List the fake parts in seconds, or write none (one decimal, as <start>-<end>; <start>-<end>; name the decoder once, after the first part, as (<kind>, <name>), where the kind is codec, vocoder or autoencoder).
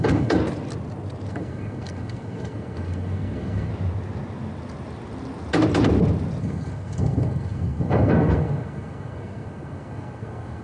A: 0.0-0.4 (codec, SNAC); 1.3-3.7; 6.4-10.6